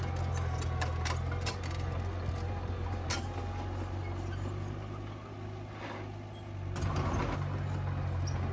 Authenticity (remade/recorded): recorded